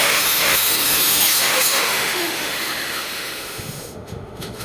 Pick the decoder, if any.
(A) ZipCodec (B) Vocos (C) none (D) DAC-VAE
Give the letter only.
D